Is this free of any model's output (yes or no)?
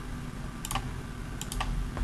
yes